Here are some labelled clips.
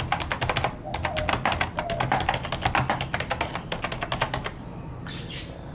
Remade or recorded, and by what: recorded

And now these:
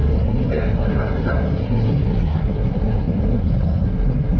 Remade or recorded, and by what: remade, codec, SNAC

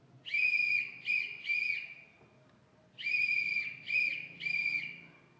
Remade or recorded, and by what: recorded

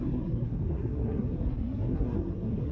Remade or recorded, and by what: remade, codec, SNAC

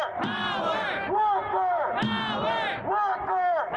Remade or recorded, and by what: recorded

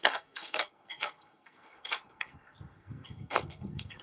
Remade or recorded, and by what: remade, codec, SNAC